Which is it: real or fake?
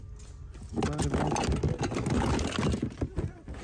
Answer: real